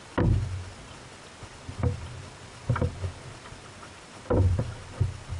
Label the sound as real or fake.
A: real